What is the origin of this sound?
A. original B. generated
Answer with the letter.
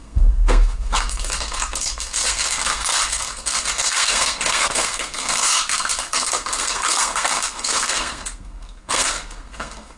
B